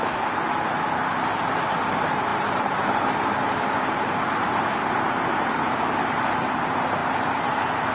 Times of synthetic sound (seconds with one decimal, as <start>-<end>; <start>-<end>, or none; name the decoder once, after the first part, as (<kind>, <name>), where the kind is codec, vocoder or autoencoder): 2.3-4.6 (vocoder, BigVGAN v2); 7.0-7.9